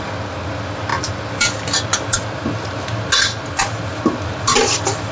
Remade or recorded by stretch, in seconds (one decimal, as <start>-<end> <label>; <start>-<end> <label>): 0.0-5.1 recorded